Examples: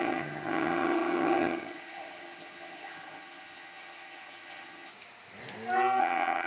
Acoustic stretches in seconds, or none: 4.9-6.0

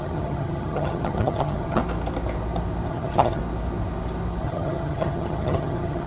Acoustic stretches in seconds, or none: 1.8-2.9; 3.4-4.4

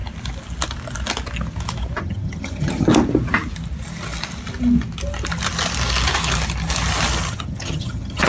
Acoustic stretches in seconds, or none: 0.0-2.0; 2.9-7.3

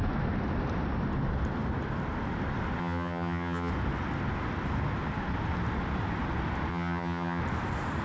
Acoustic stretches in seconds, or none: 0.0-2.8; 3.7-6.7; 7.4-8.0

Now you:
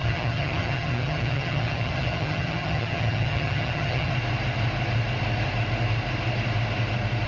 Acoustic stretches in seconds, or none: 4.1-7.3

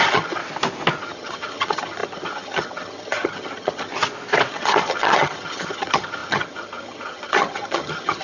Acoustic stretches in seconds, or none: 0.4-1.0; 3.9-4.5

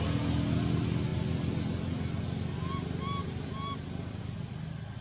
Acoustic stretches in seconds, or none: 0.0-5.0

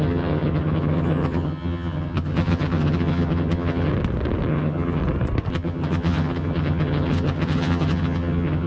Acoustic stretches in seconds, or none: 3.9-4.5; 5.0-5.5